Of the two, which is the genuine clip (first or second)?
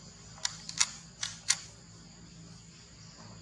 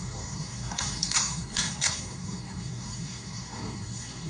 first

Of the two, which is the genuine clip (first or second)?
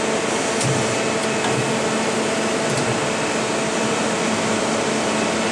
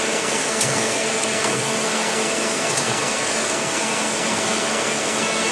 first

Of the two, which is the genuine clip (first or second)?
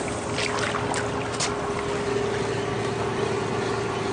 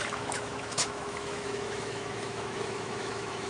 first